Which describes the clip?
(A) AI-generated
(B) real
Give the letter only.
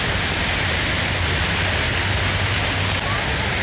B